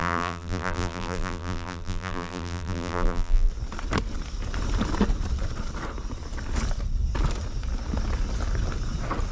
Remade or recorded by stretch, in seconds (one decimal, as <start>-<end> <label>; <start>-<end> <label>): 0.0-3.5 remade; 3.5-9.3 recorded